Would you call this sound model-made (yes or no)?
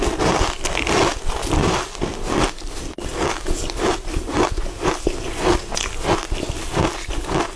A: no